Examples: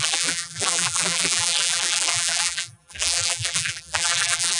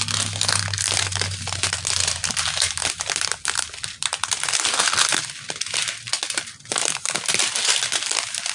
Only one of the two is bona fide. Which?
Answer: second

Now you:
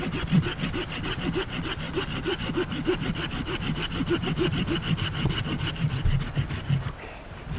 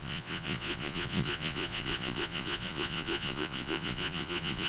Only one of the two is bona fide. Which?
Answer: first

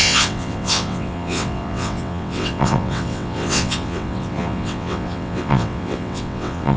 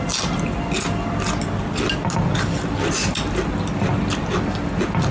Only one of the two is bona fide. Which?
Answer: second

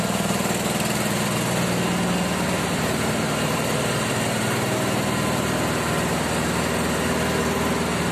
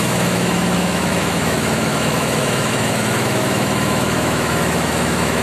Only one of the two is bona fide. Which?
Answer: first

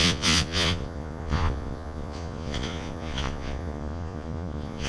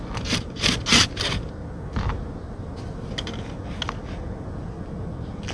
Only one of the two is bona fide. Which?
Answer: second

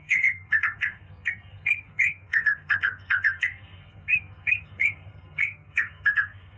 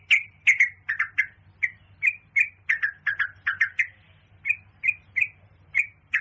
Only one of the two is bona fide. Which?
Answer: second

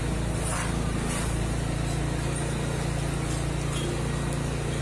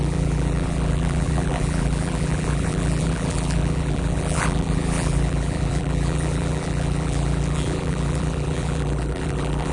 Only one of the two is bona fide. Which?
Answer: first